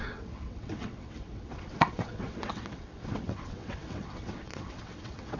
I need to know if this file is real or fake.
fake